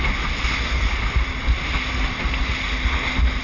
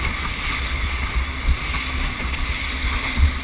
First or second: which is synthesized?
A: second